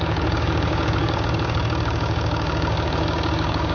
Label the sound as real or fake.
fake